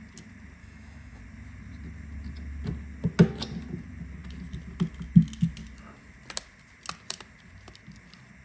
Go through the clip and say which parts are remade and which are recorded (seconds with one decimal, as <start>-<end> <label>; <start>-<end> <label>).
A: 0.0-0.6 recorded; 0.6-1.2 remade; 1.2-8.4 recorded